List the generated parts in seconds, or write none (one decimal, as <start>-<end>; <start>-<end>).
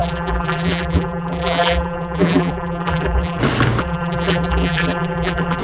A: 0.0-3.4; 3.8-5.6